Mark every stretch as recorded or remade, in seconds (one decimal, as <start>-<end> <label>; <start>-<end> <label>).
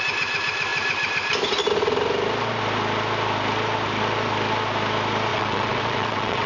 0.0-5.3 recorded; 5.3-6.5 remade